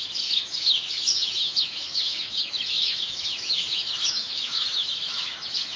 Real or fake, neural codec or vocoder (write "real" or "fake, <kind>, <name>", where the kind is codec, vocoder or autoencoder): fake, autoencoder, DAC-VAE